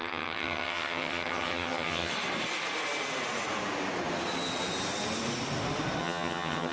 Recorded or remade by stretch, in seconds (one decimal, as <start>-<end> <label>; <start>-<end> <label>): 0.0-2.1 remade; 2.1-6.0 recorded; 6.0-6.7 remade